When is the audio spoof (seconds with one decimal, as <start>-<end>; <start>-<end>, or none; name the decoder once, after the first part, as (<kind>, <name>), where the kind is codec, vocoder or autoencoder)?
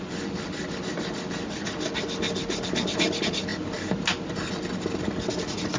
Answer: none